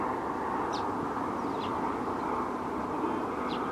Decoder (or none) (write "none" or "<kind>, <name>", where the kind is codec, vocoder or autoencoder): none